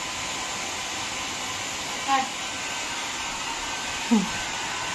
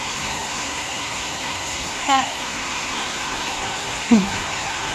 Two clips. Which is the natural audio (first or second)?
first